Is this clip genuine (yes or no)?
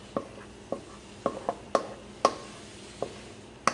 yes